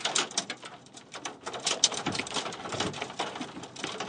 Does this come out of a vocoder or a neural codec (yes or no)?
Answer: no